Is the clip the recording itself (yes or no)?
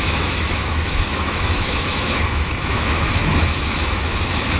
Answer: no